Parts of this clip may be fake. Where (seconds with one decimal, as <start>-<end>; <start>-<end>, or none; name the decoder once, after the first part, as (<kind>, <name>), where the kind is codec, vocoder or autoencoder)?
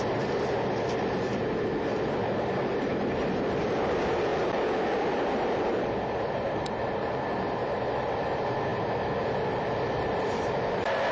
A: none